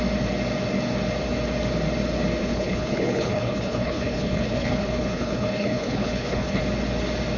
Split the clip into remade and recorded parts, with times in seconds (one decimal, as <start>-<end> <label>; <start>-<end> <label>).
0.0-2.4 recorded; 2.4-6.6 remade; 6.6-7.4 recorded